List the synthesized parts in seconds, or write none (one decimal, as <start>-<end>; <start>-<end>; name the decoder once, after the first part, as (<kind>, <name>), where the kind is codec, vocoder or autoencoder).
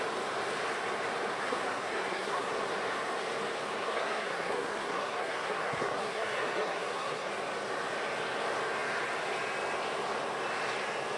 1.3-2.5 (codec, SNAC); 3.8-7.3